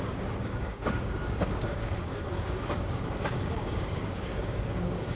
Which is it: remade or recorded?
remade